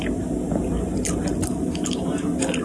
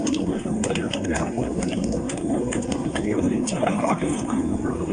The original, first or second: first